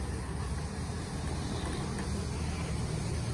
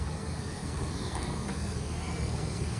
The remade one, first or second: second